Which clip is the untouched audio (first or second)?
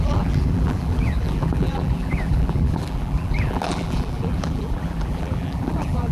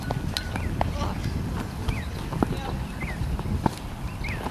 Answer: second